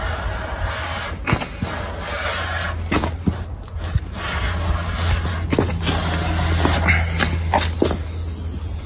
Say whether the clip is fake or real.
real